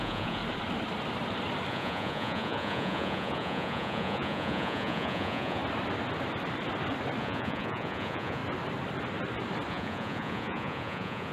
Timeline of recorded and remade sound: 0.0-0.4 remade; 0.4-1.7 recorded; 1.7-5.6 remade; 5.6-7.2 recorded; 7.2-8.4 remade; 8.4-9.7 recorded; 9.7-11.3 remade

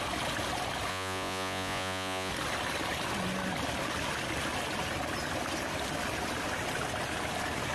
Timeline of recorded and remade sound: 0.0-0.9 recorded; 0.9-2.3 remade; 2.3-7.7 recorded

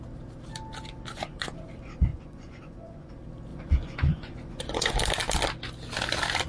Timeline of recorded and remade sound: 0.0-1.1 recorded; 1.1-1.7 remade; 1.7-2.1 recorded; 2.1-3.1 remade; 3.1-3.5 recorded; 3.5-5.0 remade; 5.0-6.5 recorded

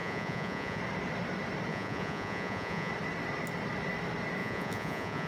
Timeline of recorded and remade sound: 0.0-0.8 remade; 0.8-1.7 recorded; 1.7-2.9 remade; 2.9-4.4 recorded; 4.4-5.3 remade

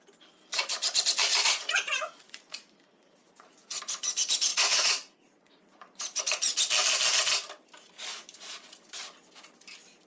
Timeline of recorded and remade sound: 0.0-1.3 recorded; 1.3-3.8 remade; 3.8-4.5 recorded; 4.5-6.2 remade; 6.2-10.1 recorded

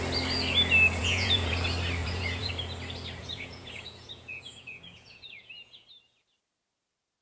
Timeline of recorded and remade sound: 0.0-1.0 recorded; 1.0-1.5 remade; 1.5-2.0 recorded; 2.0-2.5 remade; 2.5-3.2 recorded; 3.2-5.8 remade; 5.8-7.2 recorded

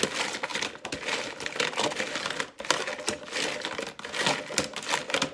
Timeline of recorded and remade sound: 0.0-5.3 recorded